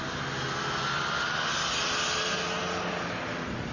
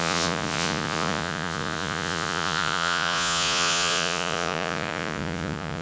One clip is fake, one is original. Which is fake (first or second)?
second